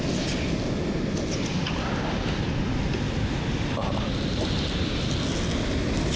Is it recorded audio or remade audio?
recorded